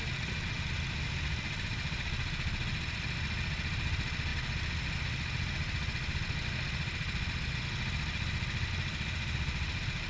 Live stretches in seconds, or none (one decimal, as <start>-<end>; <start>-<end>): 0.0-10.1